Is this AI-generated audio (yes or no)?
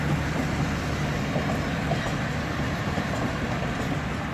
no